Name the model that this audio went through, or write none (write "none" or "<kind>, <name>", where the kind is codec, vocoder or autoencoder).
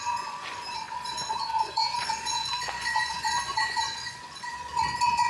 vocoder, Vocos